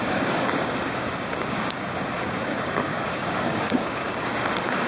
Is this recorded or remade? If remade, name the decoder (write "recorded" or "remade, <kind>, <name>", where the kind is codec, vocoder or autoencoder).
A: remade, codec, DAC